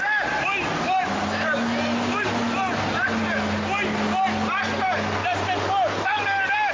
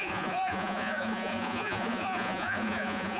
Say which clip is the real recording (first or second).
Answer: first